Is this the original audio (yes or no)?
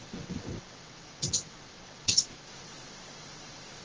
no